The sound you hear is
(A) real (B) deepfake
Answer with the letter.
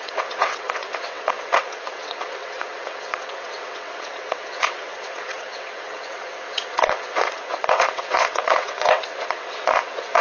B